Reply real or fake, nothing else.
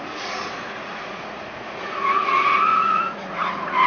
fake